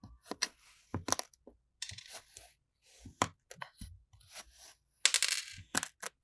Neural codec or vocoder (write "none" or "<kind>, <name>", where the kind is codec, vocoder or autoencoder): none